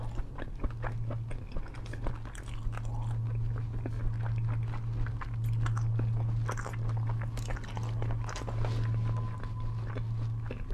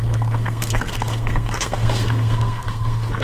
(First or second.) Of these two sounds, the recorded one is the first